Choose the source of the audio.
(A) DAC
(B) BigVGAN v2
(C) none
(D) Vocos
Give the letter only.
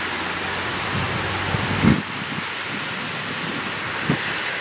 C